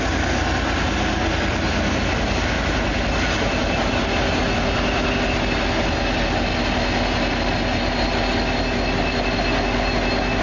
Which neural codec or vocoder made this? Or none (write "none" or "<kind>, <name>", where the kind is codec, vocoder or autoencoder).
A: none